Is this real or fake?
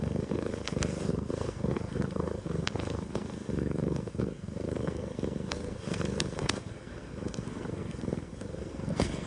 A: fake